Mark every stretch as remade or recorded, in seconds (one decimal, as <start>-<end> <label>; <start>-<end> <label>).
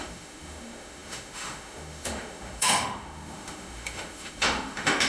0.0-5.1 remade